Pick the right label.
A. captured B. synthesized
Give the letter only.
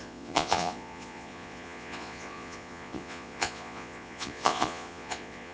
B